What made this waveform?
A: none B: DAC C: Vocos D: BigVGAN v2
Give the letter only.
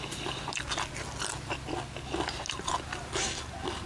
A